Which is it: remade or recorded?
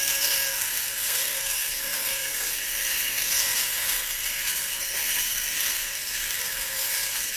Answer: remade